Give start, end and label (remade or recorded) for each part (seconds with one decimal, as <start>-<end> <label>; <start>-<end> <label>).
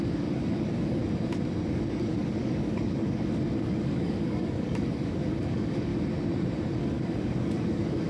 0.0-1.0 remade; 1.0-1.7 recorded; 1.7-5.9 remade; 5.9-6.8 recorded; 6.8-8.1 remade